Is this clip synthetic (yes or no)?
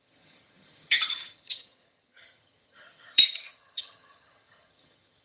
yes